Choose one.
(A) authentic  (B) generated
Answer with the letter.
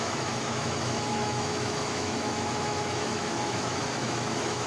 B